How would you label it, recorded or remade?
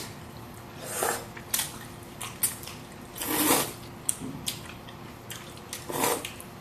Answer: recorded